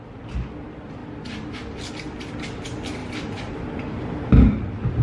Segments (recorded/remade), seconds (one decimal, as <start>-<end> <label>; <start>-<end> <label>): 0.0-3.0 recorded; 3.0-5.0 remade